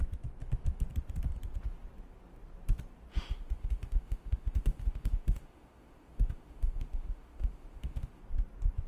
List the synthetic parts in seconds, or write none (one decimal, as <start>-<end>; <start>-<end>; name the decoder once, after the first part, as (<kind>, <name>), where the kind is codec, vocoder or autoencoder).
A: 3.1-8.2 (autoencoder, DAC-VAE)